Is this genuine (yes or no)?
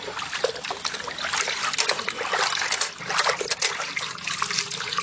yes